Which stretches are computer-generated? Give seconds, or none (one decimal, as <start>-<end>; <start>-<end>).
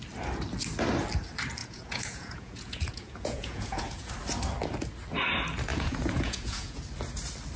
1.6-4.1; 5.7-6.8